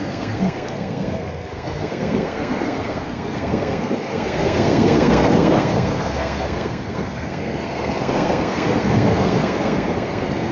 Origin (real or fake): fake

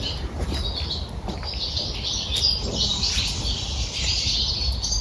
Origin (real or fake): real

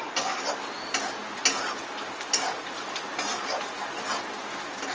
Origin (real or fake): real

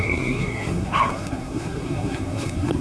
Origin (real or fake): fake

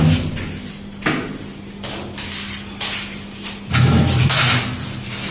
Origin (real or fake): real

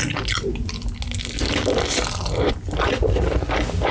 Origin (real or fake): real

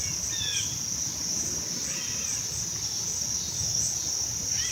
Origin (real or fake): real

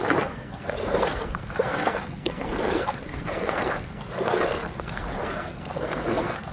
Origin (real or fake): fake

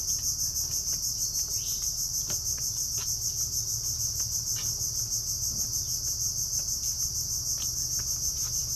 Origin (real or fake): real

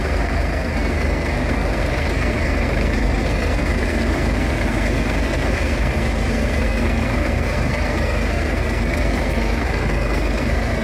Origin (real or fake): fake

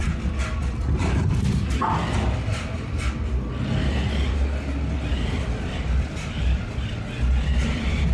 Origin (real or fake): real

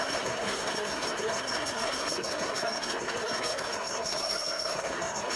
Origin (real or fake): fake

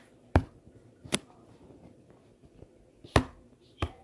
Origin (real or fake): real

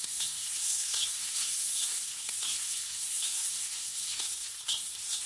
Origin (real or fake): fake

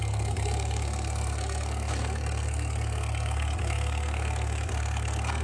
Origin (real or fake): fake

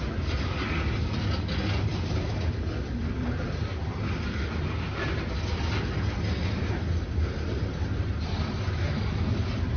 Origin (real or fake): real